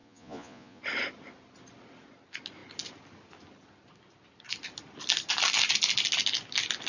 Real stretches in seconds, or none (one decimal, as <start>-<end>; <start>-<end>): 0.8-6.9